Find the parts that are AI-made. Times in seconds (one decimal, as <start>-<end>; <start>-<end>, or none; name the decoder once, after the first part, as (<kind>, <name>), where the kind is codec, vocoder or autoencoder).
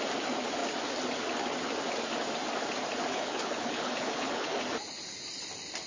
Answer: 3.1-4.6 (codec, HILCodec)